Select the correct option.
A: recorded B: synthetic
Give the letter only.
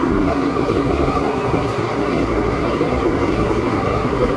B